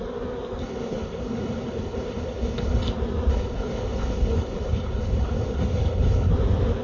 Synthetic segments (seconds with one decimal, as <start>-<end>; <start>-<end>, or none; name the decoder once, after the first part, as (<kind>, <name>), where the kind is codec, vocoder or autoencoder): 0.6-2.9 (codec, HILCodec); 3.3-6.3